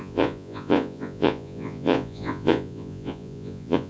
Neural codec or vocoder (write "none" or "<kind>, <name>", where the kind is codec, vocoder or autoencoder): vocoder, Vocos